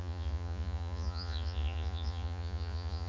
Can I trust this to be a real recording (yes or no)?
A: no